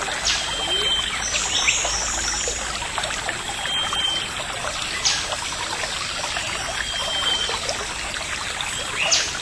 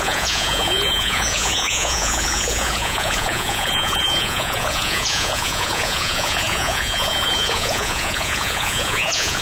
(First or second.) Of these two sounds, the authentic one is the first